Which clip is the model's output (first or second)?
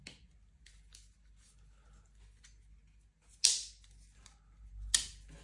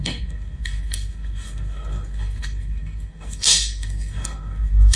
second